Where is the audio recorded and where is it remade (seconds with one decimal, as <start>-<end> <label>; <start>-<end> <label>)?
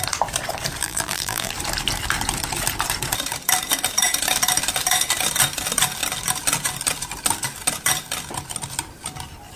0.0-0.8 recorded; 0.8-1.5 remade; 1.5-9.6 recorded